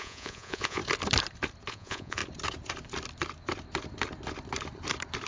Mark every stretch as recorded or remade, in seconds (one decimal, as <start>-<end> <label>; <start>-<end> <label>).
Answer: 0.0-0.8 remade; 0.8-1.7 recorded; 1.7-2.2 remade; 2.2-5.3 recorded